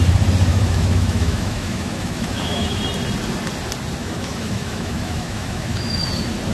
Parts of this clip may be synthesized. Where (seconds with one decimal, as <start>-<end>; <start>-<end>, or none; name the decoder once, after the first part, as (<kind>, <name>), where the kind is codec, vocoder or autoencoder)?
0.5-2.8 (autoencoder, DAC-VAE); 4.0-6.0

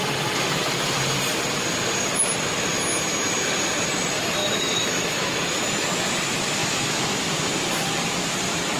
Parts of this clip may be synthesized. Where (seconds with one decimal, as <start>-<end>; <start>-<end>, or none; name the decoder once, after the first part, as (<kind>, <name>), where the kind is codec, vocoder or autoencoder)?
4.4-5.3 (autoencoder, DAC-VAE); 6.6-7.2